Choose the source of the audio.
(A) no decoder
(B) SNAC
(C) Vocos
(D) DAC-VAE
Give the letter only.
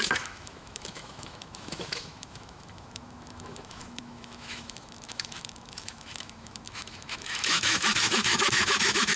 D